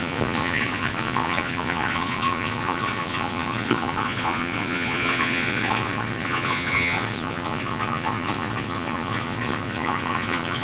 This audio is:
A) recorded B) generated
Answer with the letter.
B